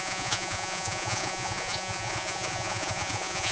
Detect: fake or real fake